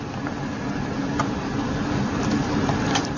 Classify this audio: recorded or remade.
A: recorded